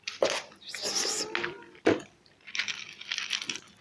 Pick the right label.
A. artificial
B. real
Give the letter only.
B